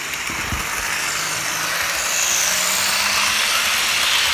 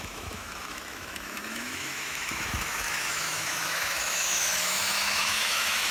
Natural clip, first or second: first